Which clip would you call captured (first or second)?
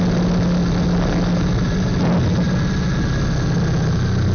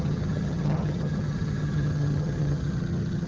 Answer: first